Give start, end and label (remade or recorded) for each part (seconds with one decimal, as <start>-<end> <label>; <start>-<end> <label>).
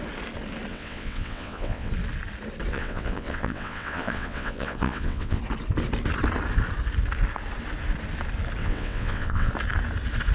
0.0-0.7 recorded; 0.7-1.9 remade; 1.9-2.7 recorded; 2.7-5.4 remade; 5.4-8.6 recorded; 8.6-9.5 remade; 9.5-10.3 recorded